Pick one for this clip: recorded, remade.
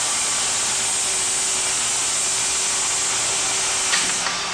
recorded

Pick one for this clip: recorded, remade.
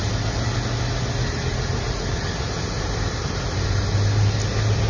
recorded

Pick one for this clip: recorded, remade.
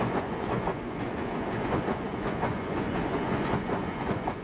remade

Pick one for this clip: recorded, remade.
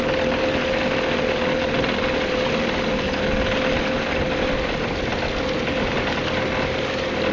recorded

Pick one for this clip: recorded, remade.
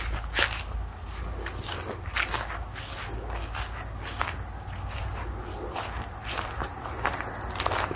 recorded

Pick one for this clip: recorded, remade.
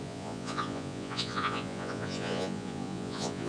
remade